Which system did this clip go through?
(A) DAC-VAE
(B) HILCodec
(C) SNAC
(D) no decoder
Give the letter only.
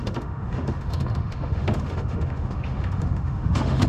A